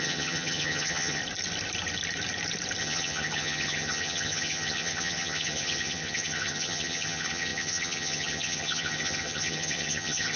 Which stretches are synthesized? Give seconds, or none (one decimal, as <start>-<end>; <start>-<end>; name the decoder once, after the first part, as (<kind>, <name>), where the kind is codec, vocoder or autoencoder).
0.0-1.2 (vocoder, HiFi-GAN); 2.8-10.4